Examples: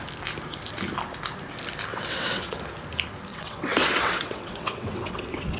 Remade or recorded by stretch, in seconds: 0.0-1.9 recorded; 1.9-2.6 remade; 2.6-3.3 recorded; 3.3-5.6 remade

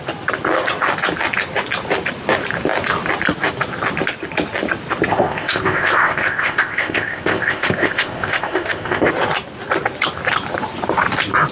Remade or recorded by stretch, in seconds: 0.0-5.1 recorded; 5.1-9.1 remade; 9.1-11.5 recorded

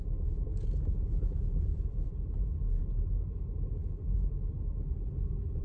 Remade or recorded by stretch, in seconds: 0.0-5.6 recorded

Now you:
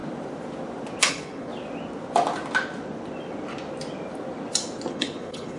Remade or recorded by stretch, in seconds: 0.0-1.1 recorded; 1.1-1.5 remade; 1.5-4.9 recorded; 4.9-5.6 remade

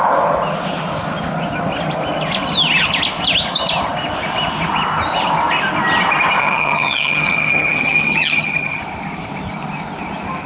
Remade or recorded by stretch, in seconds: 0.0-6.4 recorded; 6.4-8.8 remade; 8.8-10.5 recorded